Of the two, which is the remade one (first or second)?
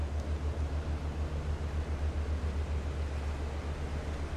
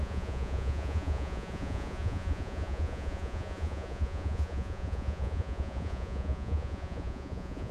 second